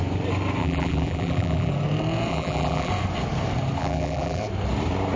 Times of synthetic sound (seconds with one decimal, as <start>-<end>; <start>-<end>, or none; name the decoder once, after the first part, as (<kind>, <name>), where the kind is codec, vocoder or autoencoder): 0.6-1.7 (vocoder, BigVGAN v2); 2.3-2.9; 3.8-4.4